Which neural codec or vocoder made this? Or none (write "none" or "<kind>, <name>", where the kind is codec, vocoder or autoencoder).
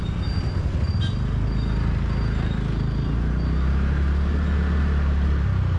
none